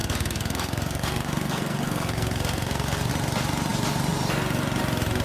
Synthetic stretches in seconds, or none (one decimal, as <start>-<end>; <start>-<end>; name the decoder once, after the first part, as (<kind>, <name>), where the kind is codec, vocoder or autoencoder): 0.0-3.1 (codec, SNAC)